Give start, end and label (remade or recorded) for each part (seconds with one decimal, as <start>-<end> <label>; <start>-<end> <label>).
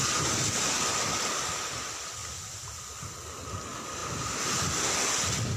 0.0-5.6 recorded